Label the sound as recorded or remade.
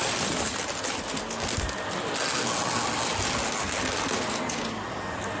recorded